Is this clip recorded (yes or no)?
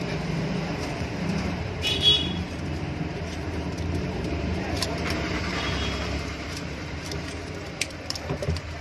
no